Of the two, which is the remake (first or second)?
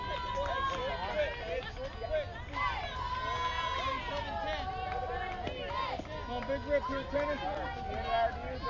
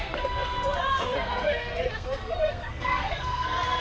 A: second